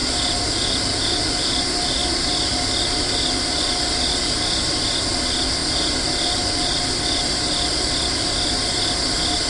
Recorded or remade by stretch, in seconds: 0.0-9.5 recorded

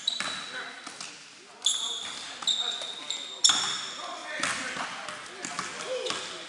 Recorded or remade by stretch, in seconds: 0.0-6.5 recorded

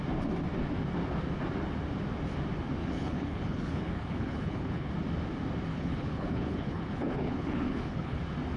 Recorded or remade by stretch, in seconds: 0.0-2.8 recorded; 2.8-4.9 remade; 4.9-5.7 recorded; 5.7-8.2 remade; 8.2-8.6 recorded

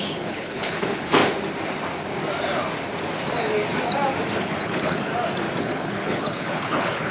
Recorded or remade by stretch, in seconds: 0.0-1.2 remade; 1.2-4.4 recorded; 4.4-5.1 remade; 5.1-5.6 recorded; 5.6-7.1 remade

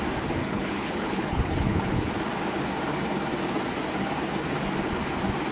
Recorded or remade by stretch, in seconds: 0.0-0.4 recorded; 0.4-2.1 remade; 2.1-5.5 recorded

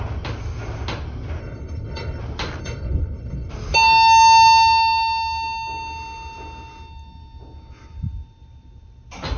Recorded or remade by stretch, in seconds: 0.0-1.4 recorded; 1.4-2.2 remade; 2.2-2.6 recorded; 2.6-3.5 remade; 3.5-9.4 recorded

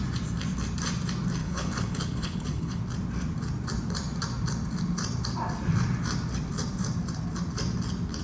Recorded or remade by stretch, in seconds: 0.0-1.4 recorded; 1.4-2.8 remade; 2.8-8.2 recorded

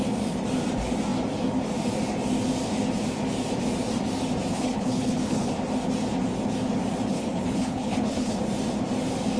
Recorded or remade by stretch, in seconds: 0.0-4.5 recorded; 4.5-5.5 remade; 5.5-7.1 recorded; 7.1-8.4 remade; 8.4-9.4 recorded